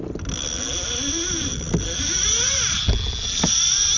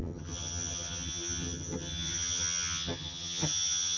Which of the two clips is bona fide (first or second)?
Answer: first